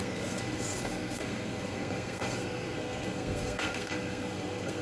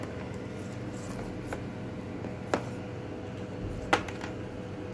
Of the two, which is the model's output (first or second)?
first